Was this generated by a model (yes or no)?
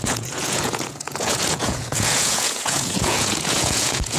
yes